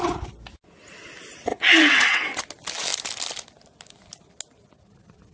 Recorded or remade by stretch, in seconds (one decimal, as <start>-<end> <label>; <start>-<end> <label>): 0.0-1.5 recorded; 1.5-2.4 remade; 2.4-5.3 recorded